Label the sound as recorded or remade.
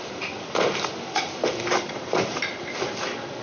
remade